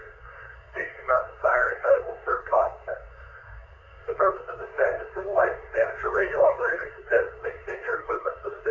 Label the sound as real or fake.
fake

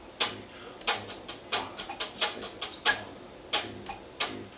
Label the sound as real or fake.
real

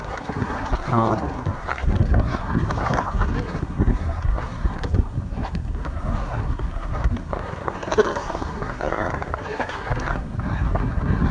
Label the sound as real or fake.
fake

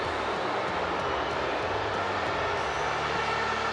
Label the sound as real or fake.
real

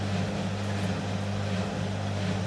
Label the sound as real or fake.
real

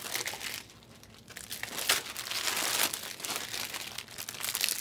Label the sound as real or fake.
real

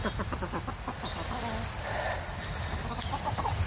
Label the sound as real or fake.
real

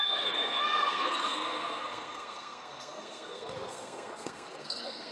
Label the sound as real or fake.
fake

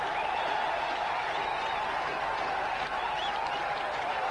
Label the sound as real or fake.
real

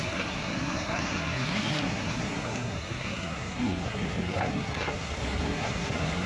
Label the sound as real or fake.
fake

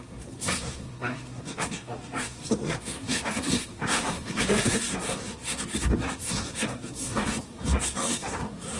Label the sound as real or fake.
fake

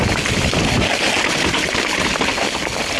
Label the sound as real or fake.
real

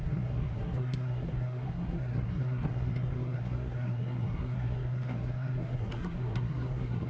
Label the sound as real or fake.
fake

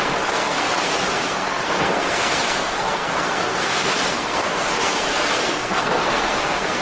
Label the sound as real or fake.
fake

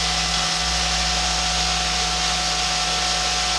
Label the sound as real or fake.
real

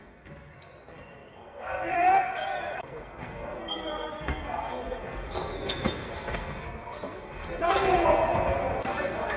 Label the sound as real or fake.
fake